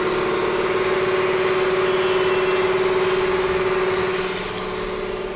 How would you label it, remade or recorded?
recorded